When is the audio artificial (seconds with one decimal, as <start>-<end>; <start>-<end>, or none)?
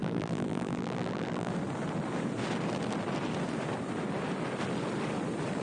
0.0-1.5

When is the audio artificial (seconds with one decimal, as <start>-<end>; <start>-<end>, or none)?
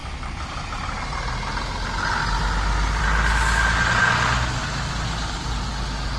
none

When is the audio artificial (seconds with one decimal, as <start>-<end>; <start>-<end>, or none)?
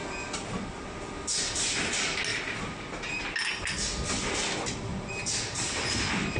2.3-3.2; 4.9-5.9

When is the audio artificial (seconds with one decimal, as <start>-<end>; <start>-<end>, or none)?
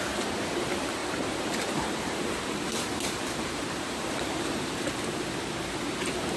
1.0-4.8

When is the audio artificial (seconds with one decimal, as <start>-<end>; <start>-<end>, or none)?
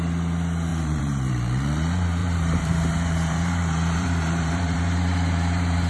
0.7-1.3; 2.2-5.9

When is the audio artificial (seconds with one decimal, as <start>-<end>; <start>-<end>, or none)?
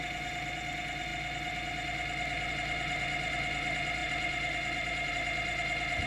none